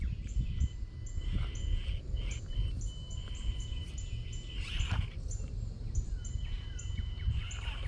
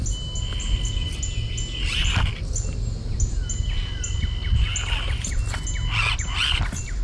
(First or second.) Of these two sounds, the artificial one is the first